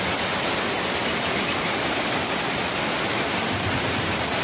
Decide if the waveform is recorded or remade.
recorded